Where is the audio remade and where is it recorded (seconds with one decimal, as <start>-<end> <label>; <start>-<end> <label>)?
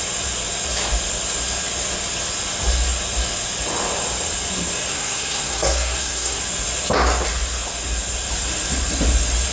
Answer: 0.0-4.9 recorded; 4.9-6.4 remade; 6.4-9.5 recorded